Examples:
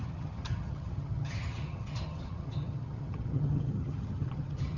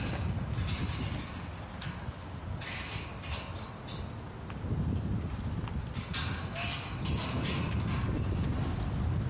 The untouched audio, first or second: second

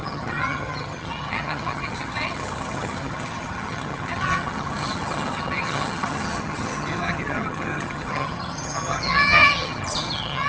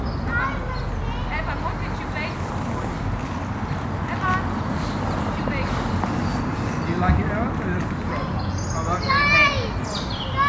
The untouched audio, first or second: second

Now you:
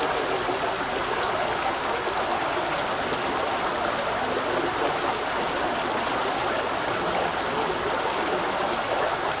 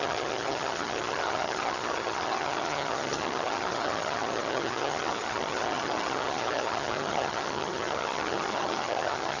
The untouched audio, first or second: first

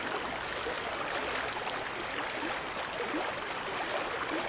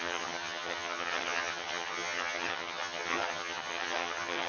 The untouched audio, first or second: first